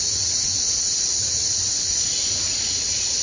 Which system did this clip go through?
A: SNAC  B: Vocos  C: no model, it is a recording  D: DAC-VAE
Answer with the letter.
B